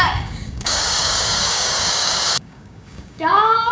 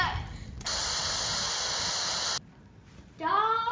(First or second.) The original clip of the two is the second